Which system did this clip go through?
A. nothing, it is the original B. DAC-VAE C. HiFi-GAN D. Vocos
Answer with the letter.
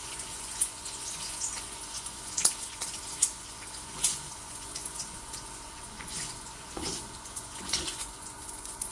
D